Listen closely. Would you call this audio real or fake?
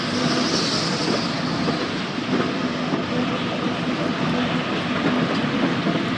fake